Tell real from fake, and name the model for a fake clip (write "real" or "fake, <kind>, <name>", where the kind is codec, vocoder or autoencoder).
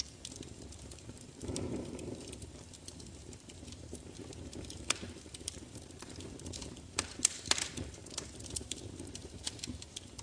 fake, vocoder, BigVGAN v2